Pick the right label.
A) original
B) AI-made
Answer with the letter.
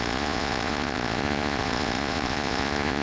B